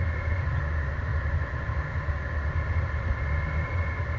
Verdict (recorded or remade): recorded